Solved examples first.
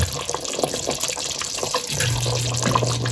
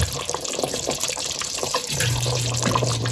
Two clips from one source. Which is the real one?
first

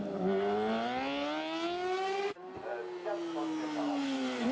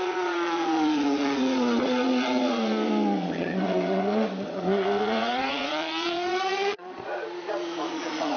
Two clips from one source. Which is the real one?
first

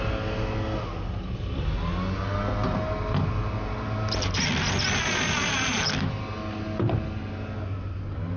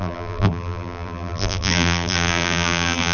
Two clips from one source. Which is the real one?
first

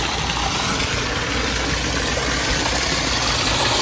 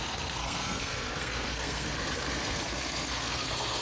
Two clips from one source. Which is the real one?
first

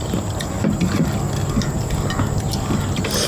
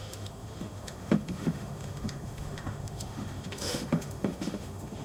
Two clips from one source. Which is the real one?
first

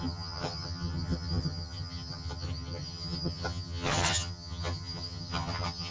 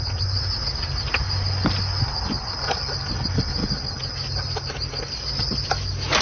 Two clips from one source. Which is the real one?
second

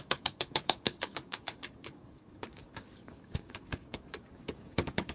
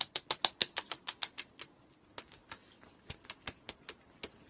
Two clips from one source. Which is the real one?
second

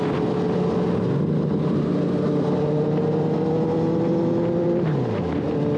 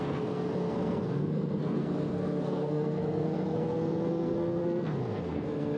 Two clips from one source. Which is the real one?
first